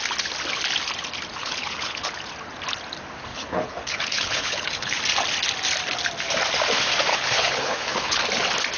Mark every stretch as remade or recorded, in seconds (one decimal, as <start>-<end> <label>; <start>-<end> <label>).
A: 0.0-1.4 recorded; 1.4-2.1 remade; 2.1-3.3 recorded; 3.3-5.0 remade; 5.0-7.1 recorded; 7.1-8.2 remade; 8.2-8.8 recorded